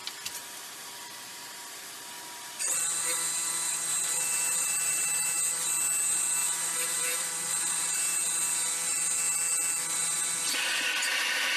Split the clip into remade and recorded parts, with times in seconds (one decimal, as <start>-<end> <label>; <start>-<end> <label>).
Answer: 0.0-3.9 recorded; 3.9-5.4 remade; 5.4-6.4 recorded; 6.4-8.2 remade; 8.2-11.6 recorded